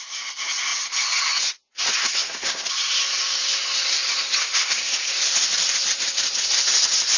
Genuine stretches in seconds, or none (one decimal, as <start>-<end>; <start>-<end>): 0.0-2.0; 2.6-4.4; 4.9-7.2